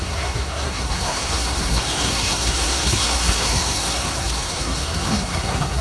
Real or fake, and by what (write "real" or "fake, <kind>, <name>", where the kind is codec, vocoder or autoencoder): fake, codec, SNAC